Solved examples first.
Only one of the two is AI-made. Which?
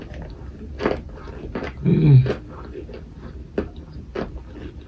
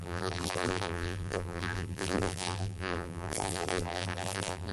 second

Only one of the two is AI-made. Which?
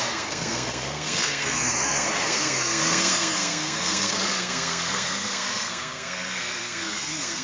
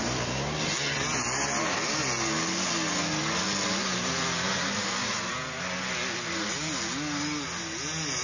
first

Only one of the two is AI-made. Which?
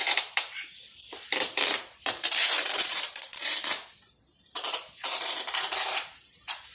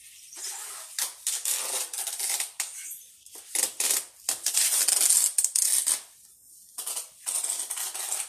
first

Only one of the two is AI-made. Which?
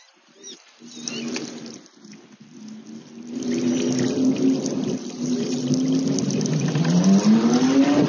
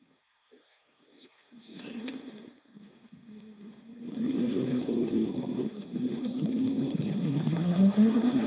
second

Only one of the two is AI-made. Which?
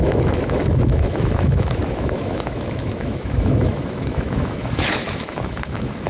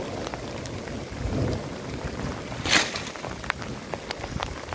first